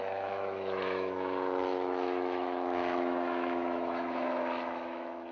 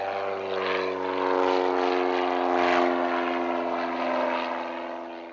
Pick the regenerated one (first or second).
first